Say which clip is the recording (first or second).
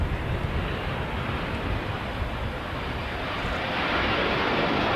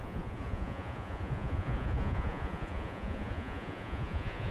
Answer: first